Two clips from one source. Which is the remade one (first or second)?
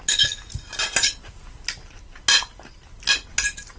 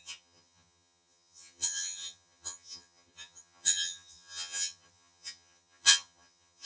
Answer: second